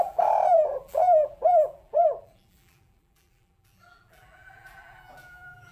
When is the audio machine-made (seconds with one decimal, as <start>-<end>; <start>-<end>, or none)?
0.0-5.7